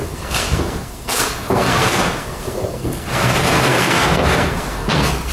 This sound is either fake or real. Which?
fake